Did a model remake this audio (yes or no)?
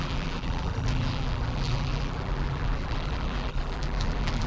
yes